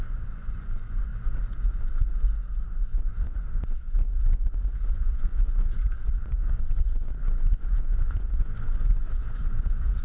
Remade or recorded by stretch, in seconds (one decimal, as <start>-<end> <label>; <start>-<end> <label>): 0.0-1.1 remade; 1.1-3.1 recorded; 3.1-10.0 remade

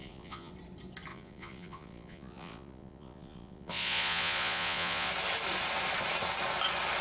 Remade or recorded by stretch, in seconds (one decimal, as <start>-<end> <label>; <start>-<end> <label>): 0.0-0.5 remade; 0.5-1.1 recorded; 1.1-5.1 remade; 5.1-7.0 recorded

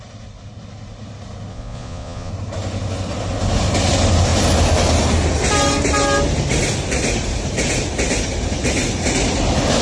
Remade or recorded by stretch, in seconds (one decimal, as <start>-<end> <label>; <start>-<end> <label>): 0.0-1.5 recorded; 1.5-2.3 remade; 2.3-9.8 recorded

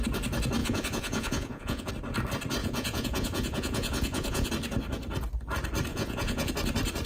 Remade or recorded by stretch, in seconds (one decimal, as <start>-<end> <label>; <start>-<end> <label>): 0.0-0.6 recorded; 0.6-1.9 remade; 1.9-2.6 recorded; 2.6-4.5 remade; 4.5-5.9 recorded; 5.9-6.5 remade; 6.5-7.1 recorded

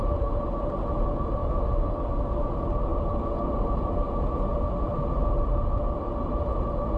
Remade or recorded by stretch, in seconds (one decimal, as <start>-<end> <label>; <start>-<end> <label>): 0.0-7.0 recorded

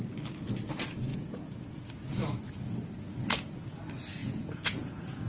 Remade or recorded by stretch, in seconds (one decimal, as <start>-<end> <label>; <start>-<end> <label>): 0.0-1.1 recorded; 1.1-1.9 remade; 1.9-4.2 recorded; 4.2-5.3 remade

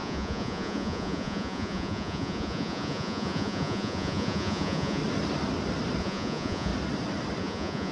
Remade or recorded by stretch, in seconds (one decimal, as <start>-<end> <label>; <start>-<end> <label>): 0.0-5.0 remade; 5.0-6.0 recorded; 6.0-6.7 remade; 6.7-7.4 recorded; 7.4-7.9 remade

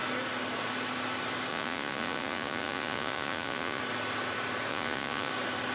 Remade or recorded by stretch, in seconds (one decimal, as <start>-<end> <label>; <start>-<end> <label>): 0.0-1.5 recorded; 1.5-3.8 remade; 3.8-4.7 recorded; 4.7-5.3 remade; 5.3-5.7 recorded